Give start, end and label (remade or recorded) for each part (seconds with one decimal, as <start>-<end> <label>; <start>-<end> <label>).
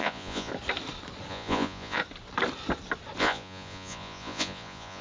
0.0-0.5 remade; 0.5-1.3 recorded; 1.3-2.0 remade; 2.0-3.2 recorded; 3.2-5.0 remade